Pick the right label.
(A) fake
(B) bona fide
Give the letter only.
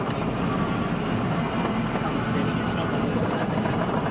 B